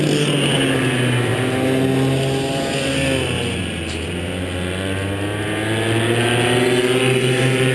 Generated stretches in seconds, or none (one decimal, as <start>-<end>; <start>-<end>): none